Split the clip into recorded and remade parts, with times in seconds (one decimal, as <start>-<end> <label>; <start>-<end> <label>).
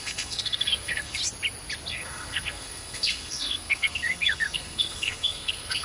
0.0-1.2 remade; 1.2-1.9 recorded; 1.9-5.8 remade